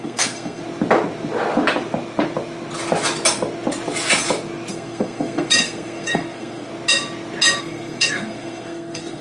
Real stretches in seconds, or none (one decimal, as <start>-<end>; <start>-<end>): 0.6-4.7; 6.7-7.6